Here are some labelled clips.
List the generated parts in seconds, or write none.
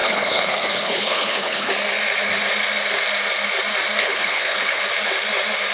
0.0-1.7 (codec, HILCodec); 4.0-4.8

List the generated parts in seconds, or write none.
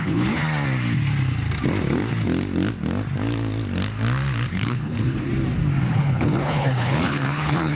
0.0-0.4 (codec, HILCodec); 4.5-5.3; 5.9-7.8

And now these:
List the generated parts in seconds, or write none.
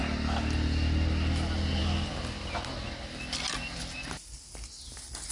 none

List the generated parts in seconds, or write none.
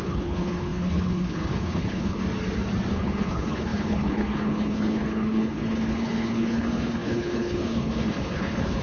0.0-2.2 (codec, HILCodec); 2.9-8.8